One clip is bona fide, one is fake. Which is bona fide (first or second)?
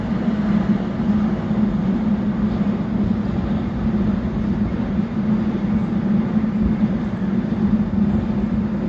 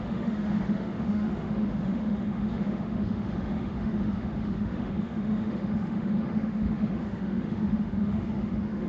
first